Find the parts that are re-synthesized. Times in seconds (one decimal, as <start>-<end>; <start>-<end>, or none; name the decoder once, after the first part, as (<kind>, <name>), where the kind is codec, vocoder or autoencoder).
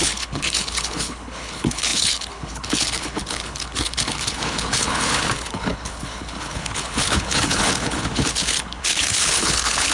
0.0-9.9 (codec, HILCodec)